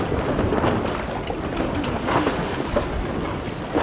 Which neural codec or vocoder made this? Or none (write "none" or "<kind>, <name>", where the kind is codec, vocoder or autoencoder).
none